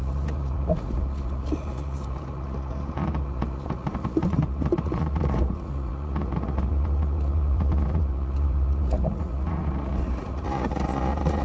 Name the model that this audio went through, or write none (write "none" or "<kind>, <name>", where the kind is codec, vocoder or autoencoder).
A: vocoder, Vocos